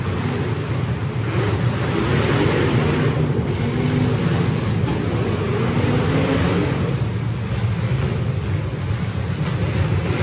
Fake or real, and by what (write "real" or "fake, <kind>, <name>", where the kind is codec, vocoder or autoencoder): real